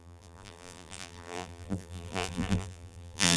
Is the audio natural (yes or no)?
no